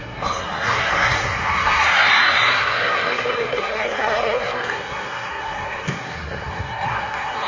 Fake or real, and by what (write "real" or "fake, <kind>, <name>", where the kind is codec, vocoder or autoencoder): fake, codec, SNAC